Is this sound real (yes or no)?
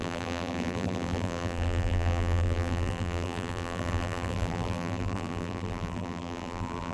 no